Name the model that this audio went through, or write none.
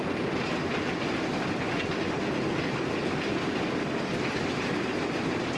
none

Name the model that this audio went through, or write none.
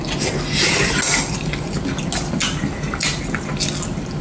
none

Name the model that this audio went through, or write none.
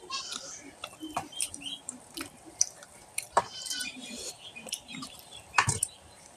vocoder, BigVGAN v2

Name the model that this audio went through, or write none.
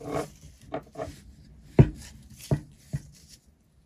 none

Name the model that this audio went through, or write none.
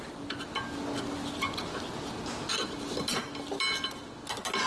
none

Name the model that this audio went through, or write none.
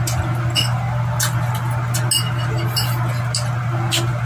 none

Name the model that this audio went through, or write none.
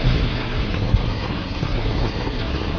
codec, SNAC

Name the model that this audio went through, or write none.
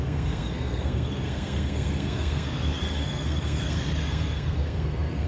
codec, SNAC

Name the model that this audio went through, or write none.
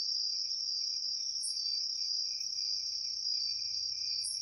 none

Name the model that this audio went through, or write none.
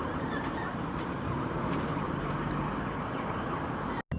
none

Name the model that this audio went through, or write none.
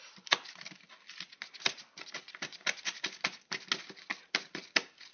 none